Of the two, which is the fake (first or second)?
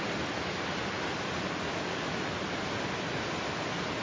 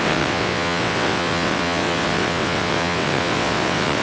second